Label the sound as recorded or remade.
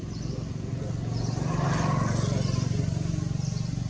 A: recorded